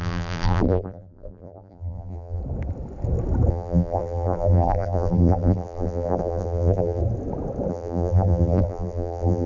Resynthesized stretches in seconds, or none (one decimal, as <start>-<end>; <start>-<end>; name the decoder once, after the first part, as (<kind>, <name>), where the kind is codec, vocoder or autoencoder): 0.0-2.4 (vocoder, BigVGAN v2); 3.5-7.0; 7.7-9.5